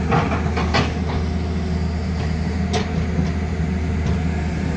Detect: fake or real real